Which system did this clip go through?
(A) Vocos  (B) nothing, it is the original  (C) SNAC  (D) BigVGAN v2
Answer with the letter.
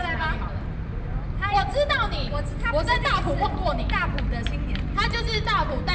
B